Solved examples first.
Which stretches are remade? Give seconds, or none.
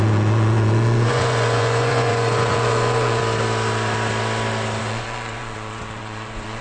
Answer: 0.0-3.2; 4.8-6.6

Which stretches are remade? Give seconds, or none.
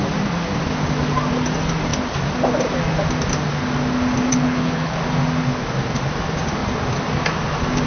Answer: 4.3-5.0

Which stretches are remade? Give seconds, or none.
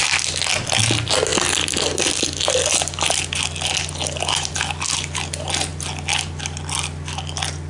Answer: none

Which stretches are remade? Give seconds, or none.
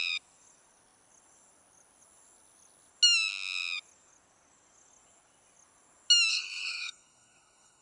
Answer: 6.3-7.8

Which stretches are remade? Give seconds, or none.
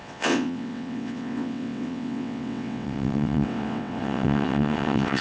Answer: 0.0-5.2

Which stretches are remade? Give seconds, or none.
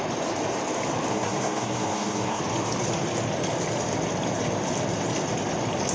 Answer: 1.1-2.4